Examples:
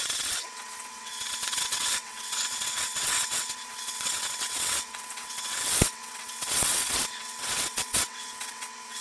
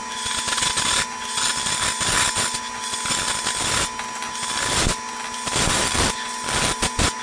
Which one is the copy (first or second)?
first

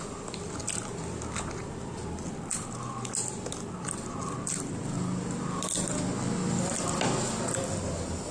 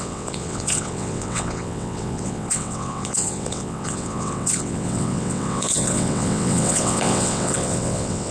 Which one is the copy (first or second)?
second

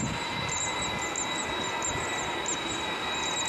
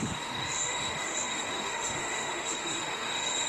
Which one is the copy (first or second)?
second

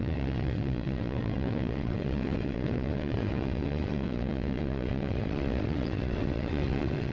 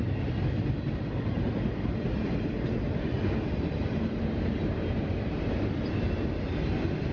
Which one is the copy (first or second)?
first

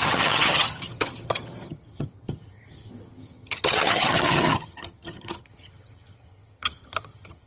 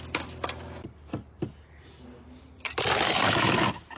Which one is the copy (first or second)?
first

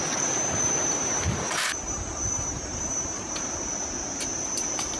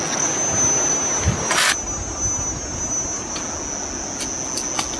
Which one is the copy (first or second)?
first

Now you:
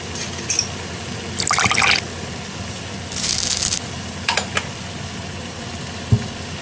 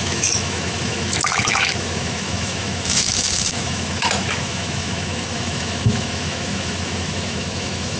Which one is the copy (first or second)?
second